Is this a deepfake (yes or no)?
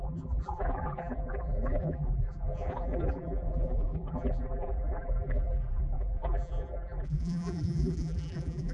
yes